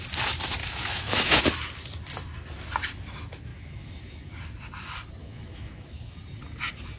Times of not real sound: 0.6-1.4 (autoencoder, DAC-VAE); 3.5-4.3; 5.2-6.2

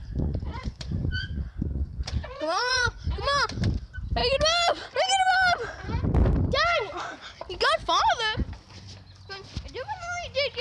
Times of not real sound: 0.0-3.1 (vocoder, Vocos)

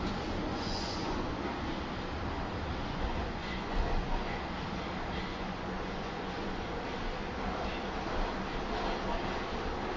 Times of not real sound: 0.5-1.4 (vocoder, Vocos); 2.8-4.4; 5.3-6.8

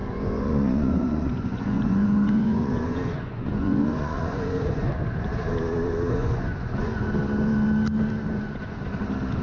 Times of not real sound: 0.0-4.9 (vocoder, Vocos); 6.2-7.1; 8.3-8.8

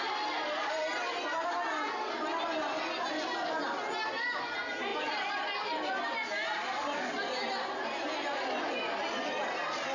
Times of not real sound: none